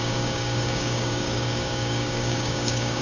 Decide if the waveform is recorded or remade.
remade